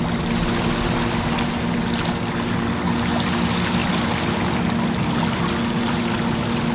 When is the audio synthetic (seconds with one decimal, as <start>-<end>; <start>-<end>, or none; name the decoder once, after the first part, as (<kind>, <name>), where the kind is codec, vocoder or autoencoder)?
none